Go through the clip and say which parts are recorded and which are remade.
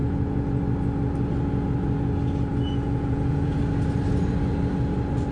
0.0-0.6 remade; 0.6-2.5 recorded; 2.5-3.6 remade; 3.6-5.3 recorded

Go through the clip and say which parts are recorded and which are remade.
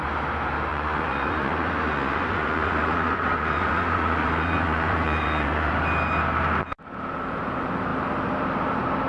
0.0-0.7 recorded; 0.7-5.7 remade; 5.7-9.1 recorded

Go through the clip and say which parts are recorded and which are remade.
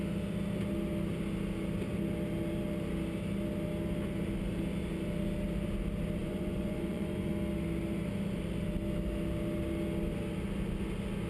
0.0-6.2 recorded; 6.2-7.3 remade; 7.3-11.3 recorded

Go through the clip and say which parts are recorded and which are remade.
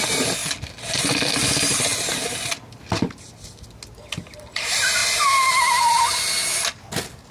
0.0-7.3 recorded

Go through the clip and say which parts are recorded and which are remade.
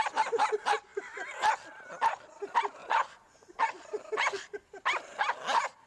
0.0-2.8 recorded; 2.8-3.7 remade; 3.7-5.9 recorded